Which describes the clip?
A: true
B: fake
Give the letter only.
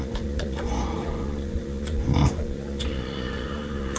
B